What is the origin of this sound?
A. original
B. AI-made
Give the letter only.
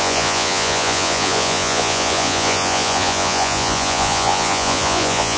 B